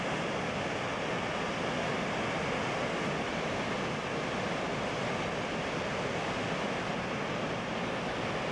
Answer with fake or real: real